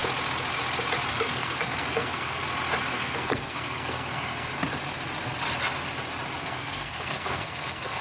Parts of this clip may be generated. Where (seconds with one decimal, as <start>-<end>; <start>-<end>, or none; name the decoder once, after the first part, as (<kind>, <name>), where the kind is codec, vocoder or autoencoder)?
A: 1.1-2.4 (codec, SNAC); 2.9-4.5; 6.4-8.0